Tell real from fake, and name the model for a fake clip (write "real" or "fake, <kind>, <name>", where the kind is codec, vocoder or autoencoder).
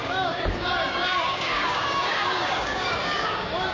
fake, codec, DAC